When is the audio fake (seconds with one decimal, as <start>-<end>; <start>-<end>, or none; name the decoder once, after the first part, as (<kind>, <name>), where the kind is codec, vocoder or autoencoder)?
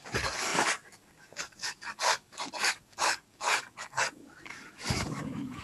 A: 0.0-5.6 (codec, DAC)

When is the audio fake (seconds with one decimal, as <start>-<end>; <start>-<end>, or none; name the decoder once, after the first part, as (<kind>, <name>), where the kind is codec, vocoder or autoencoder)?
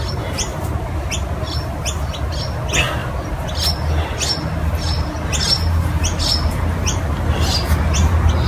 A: none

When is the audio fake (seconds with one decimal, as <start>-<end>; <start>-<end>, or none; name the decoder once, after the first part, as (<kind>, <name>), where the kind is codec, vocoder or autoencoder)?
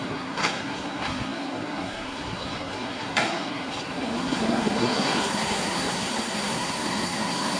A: 0.0-7.6 (codec, SNAC)